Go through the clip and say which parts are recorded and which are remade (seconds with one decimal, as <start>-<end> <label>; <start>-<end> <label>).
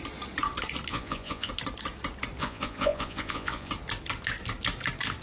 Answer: 0.0-0.9 recorded; 0.9-1.5 remade; 1.5-2.4 recorded; 2.4-3.7 remade; 3.7-5.2 recorded